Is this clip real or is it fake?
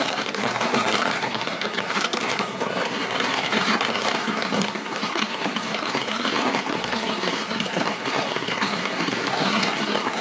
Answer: fake